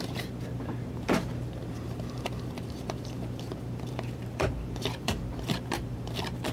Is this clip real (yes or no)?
no